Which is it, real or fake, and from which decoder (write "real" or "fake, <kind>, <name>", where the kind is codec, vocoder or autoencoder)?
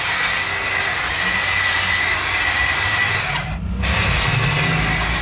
real